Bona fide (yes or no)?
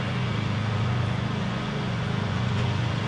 no